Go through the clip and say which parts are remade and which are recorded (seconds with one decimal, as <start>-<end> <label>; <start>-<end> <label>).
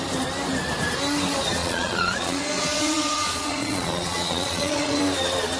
0.0-1.6 recorded; 1.6-5.0 remade; 5.0-5.6 recorded